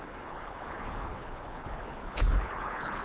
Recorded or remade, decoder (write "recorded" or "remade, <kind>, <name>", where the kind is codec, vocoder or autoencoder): remade, codec, HILCodec